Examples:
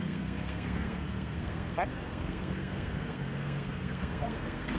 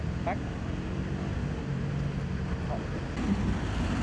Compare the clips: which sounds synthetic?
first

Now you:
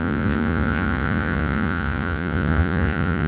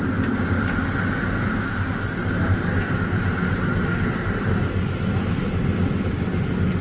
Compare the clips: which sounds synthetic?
first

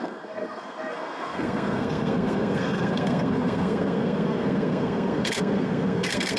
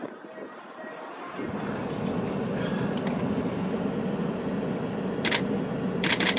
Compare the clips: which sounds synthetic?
first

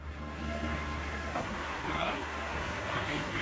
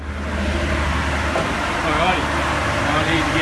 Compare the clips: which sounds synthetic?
first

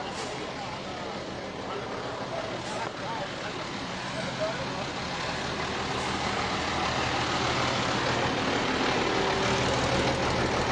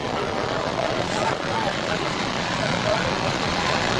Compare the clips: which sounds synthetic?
second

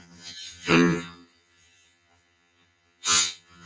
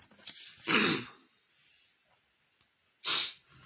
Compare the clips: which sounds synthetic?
first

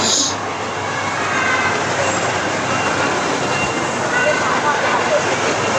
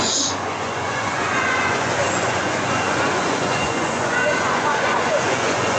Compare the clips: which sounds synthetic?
second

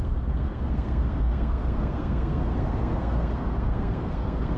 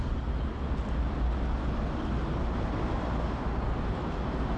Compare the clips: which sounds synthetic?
first